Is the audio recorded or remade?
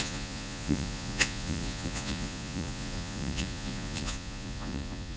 remade